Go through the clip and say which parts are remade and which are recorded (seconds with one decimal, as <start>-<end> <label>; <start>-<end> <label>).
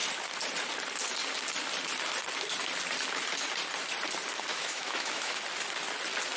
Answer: 0.0-4.5 recorded; 4.5-5.4 remade; 5.4-6.4 recorded